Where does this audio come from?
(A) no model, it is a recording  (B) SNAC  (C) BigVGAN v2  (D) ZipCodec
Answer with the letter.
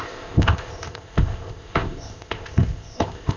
D